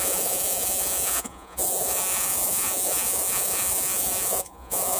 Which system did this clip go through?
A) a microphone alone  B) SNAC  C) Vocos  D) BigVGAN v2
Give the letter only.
C